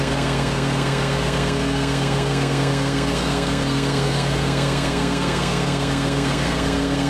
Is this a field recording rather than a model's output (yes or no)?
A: no